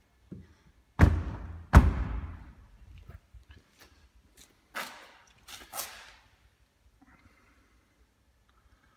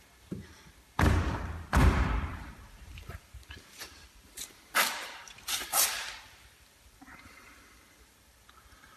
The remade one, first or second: second